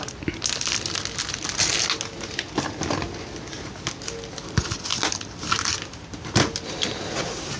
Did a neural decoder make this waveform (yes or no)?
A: no